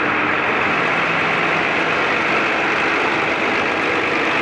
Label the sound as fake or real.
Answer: real